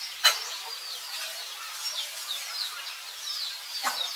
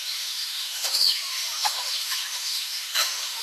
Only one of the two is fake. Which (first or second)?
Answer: second